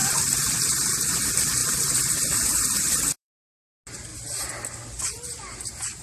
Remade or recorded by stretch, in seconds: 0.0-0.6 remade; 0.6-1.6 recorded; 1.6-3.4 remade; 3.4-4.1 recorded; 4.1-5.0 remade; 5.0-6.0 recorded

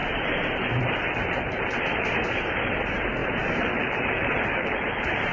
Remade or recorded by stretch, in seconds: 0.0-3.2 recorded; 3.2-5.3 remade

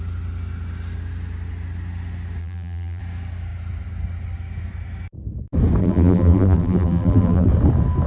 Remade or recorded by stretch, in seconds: 0.0-2.4 recorded; 2.4-3.0 remade; 3.0-5.8 recorded; 5.8-7.5 remade; 7.5-8.1 recorded

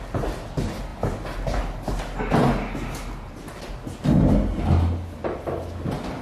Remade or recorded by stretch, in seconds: 0.0-0.9 recorded; 0.9-2.0 remade; 2.0-6.2 recorded